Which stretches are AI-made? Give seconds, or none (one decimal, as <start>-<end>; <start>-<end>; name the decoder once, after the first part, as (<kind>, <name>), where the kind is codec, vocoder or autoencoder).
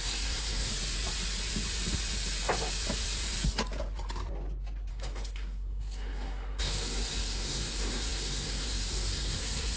0.0-0.7 (codec, SNAC); 4.9-9.8